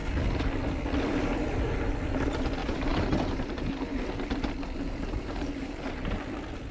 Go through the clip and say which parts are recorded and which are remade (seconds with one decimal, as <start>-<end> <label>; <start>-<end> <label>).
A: 0.0-2.6 recorded; 2.6-6.2 remade; 6.2-6.7 recorded